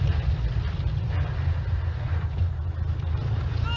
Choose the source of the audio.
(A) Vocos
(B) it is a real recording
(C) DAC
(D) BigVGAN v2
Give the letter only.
B